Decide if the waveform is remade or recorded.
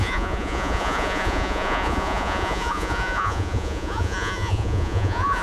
remade